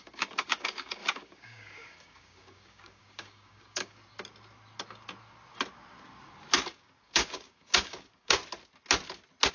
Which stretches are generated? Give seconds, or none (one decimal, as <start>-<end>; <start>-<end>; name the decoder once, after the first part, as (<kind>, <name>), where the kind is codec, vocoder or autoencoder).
0.0-4.0 (codec, DAC); 6.7-8.4